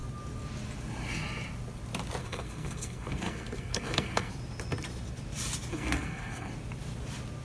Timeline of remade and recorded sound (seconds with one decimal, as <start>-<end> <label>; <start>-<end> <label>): 0.0-2.2 recorded; 2.2-4.3 remade; 4.3-5.7 recorded; 5.7-6.5 remade; 6.5-7.4 recorded